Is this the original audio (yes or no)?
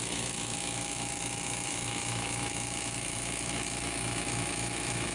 no